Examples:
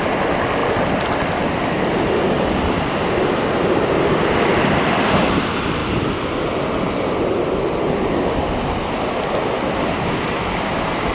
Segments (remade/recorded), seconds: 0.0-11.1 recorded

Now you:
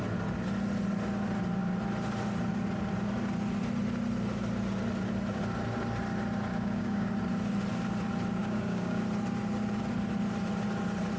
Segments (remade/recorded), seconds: 0.0-6.5 recorded; 6.5-7.1 remade; 7.1-8.4 recorded; 8.4-9.0 remade; 9.0-11.2 recorded

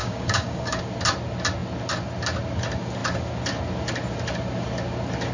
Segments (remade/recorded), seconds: 0.0-0.8 remade; 0.8-5.3 recorded

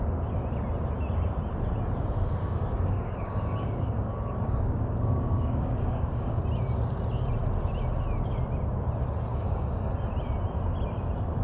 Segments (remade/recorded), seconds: 0.0-2.4 recorded; 2.4-6.4 remade; 6.4-9.3 recorded; 9.3-9.9 remade; 9.9-11.4 recorded